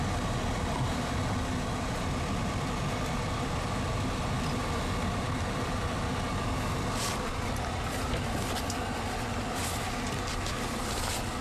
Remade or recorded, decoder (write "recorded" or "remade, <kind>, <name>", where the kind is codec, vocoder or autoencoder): recorded